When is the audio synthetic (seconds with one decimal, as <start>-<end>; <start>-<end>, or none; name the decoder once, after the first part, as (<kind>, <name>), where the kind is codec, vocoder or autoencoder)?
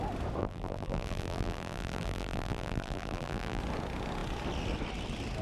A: 0.4-3.6 (vocoder, BigVGAN v2)